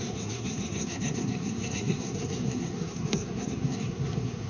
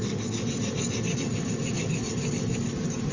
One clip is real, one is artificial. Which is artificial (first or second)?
first